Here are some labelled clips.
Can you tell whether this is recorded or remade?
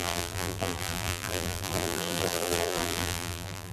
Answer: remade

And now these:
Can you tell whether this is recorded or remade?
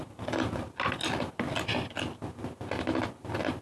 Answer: recorded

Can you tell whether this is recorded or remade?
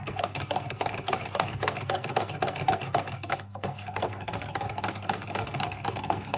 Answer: remade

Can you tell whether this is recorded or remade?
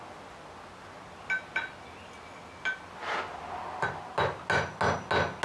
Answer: recorded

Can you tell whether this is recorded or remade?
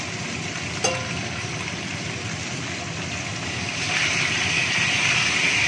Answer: recorded